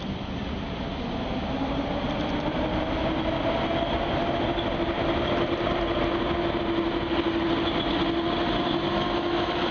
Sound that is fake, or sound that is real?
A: real